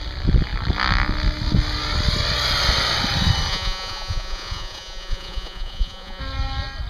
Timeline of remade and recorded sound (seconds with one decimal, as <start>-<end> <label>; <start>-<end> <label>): 0.0-3.5 recorded; 3.5-6.2 remade; 6.2-6.9 recorded